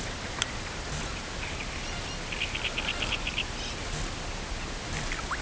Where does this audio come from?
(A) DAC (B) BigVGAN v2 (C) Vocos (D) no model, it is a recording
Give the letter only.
D